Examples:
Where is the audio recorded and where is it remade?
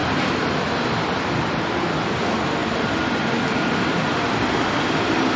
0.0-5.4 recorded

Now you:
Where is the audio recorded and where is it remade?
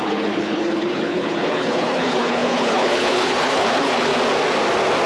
0.0-4.1 remade; 4.1-5.1 recorded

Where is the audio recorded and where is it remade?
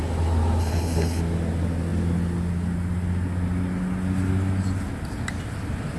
0.0-0.6 recorded; 0.6-1.2 remade; 1.2-6.0 recorded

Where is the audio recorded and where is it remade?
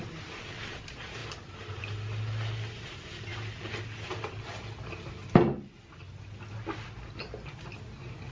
0.0-8.3 recorded